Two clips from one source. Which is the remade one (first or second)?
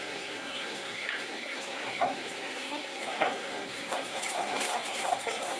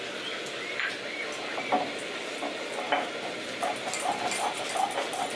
first